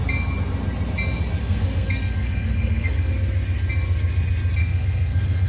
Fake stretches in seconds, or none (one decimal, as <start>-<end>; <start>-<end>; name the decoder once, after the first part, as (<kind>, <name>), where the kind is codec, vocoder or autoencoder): 1.4-3.1 (codec, SNAC); 4.6-5.5

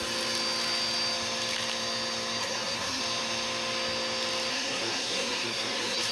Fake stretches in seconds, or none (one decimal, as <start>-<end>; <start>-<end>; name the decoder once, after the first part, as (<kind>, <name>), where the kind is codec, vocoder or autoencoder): 2.4-3.0 (codec, SNAC); 4.5-6.1

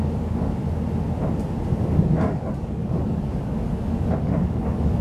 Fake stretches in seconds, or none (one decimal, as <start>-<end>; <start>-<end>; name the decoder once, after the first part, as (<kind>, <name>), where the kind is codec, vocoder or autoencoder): 0.0-0.6 (codec, DAC); 1.7-5.0

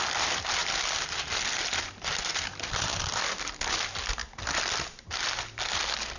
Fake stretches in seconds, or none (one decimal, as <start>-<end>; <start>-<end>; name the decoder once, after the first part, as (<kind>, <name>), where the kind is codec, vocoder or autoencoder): 0.6-2.3 (vocoder, BigVGAN v2); 2.9-3.6

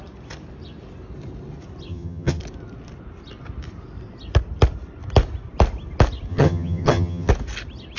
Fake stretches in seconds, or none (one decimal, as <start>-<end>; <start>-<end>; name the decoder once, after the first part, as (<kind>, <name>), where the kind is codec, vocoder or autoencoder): 1.9-2.4 (vocoder, HiFi-GAN); 6.3-7.3

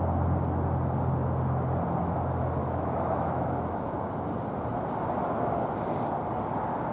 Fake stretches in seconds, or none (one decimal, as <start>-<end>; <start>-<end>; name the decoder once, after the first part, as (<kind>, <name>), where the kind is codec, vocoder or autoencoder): 2.6-4.1 (autoencoder, DAC-VAE)

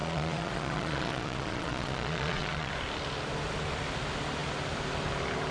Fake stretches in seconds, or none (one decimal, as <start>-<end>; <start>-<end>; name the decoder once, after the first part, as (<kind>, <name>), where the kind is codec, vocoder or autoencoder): 0.0-2.7 (vocoder, Vocos)